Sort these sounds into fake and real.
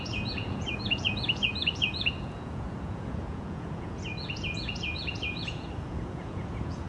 fake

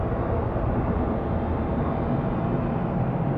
real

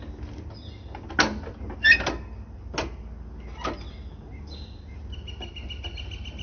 real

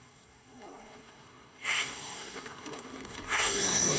fake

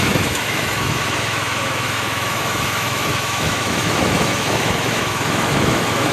fake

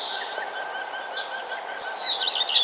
real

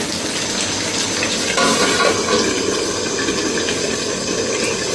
real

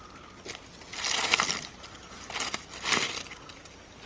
real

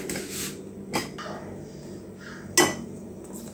real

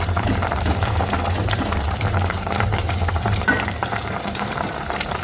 fake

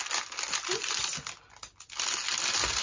real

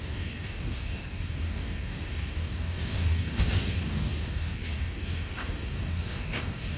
fake